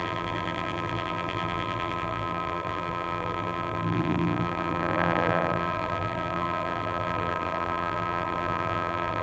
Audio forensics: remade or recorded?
remade